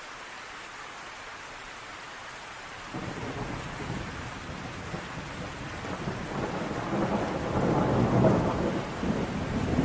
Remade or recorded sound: recorded